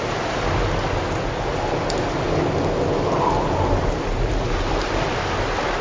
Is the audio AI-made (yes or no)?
no